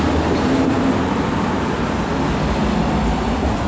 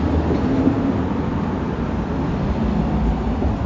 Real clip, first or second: first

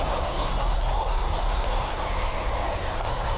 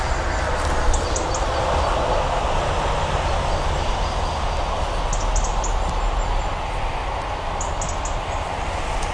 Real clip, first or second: second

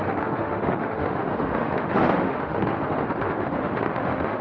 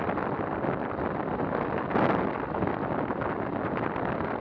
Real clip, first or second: second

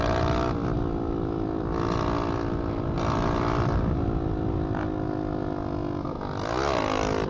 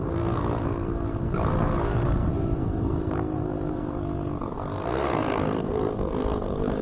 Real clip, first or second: first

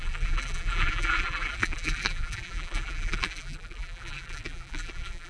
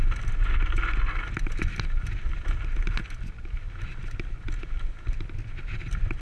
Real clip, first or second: second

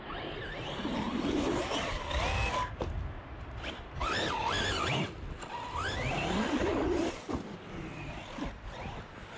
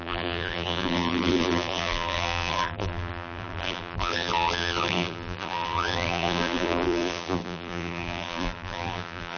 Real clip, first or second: first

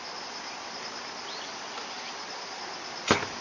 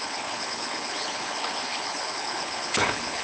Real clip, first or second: first